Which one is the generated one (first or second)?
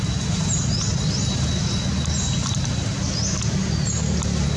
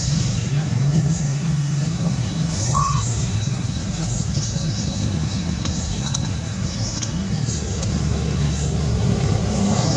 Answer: second